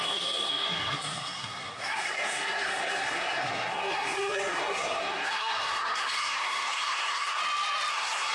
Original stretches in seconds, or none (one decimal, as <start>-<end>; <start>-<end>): 7.4-7.9